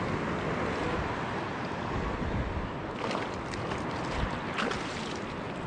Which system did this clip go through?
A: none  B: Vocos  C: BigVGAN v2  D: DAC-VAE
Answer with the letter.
A